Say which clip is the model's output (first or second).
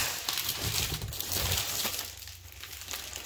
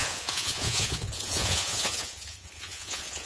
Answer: second